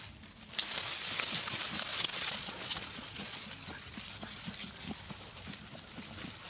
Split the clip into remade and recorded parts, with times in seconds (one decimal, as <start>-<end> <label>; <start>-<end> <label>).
0.0-1.9 recorded; 1.9-3.5 remade; 3.5-6.5 recorded